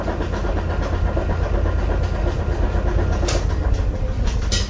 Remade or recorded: recorded